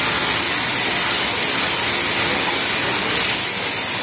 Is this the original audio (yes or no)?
yes